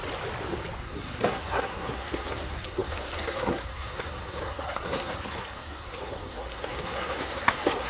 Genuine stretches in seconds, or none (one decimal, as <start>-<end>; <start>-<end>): 0.0-0.8